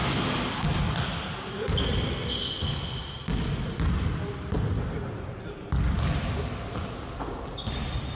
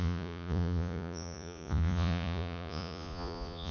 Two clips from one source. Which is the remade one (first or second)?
second